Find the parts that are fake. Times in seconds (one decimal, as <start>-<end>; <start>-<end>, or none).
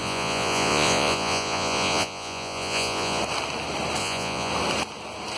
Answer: 0.0-3.2; 4.0-4.5